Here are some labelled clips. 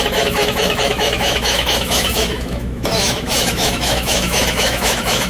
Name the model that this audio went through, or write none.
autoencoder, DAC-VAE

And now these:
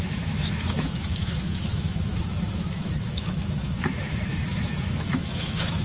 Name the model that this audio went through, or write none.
autoencoder, DAC-VAE